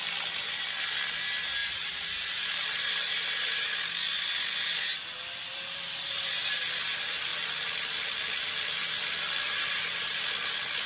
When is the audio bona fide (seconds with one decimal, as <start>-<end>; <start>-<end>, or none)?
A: 0.0-1.6; 3.7-5.5; 6.3-9.7; 10.2-10.9